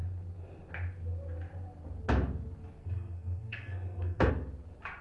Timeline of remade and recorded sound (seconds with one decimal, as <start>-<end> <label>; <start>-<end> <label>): 0.0-2.8 recorded; 2.8-4.3 remade; 4.3-5.0 recorded